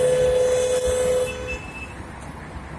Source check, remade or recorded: recorded